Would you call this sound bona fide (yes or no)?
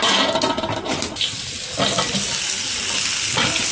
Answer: yes